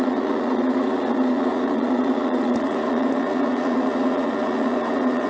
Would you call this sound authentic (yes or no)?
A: no